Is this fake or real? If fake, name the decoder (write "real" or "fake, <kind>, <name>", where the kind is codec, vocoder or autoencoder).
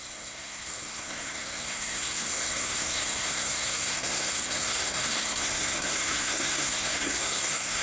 fake, codec, SNAC